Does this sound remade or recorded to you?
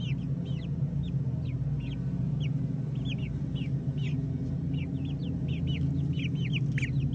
recorded